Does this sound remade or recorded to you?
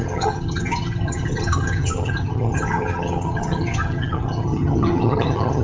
remade